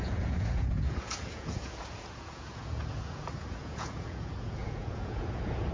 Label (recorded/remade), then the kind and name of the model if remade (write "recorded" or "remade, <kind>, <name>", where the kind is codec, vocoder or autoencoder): remade, vocoder, Vocos